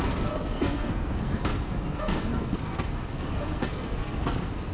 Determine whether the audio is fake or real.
fake